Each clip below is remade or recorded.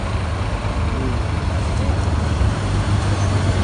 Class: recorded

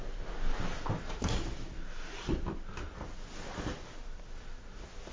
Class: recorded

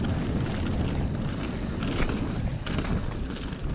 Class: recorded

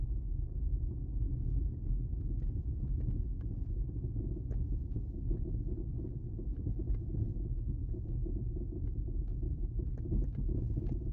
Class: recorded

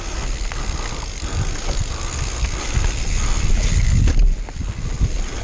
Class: recorded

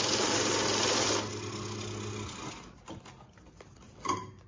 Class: recorded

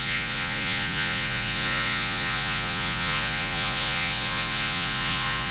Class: remade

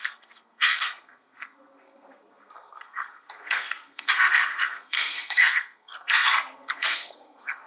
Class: remade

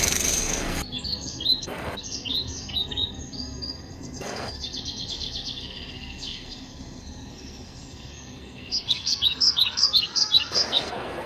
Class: remade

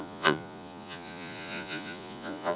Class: remade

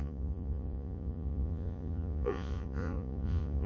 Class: remade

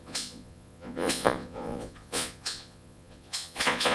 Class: remade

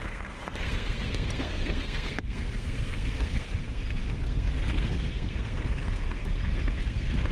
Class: remade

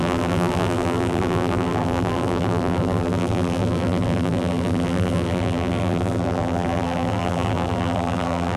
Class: remade